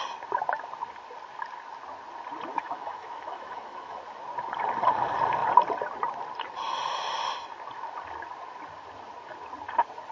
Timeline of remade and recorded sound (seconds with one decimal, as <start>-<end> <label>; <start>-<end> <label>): 0.0-2.5 recorded; 2.5-4.0 remade; 4.0-10.1 recorded